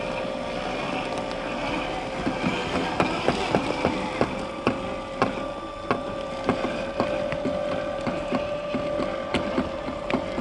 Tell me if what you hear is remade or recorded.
recorded